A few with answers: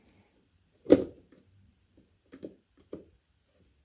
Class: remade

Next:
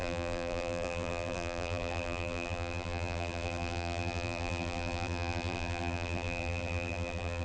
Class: remade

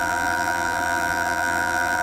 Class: remade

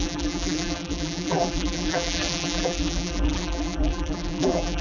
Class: remade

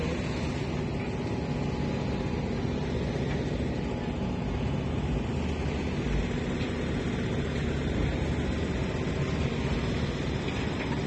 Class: recorded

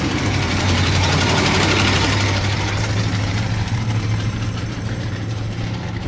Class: remade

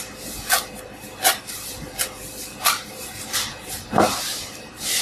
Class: remade